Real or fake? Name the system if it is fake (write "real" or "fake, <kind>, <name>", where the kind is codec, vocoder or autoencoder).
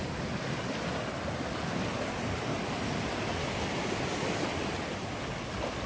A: real